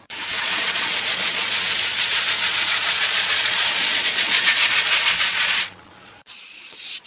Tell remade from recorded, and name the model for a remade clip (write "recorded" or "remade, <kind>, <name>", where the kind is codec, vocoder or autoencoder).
remade, vocoder, Vocos